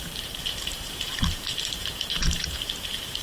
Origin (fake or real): fake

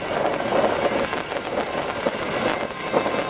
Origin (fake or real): real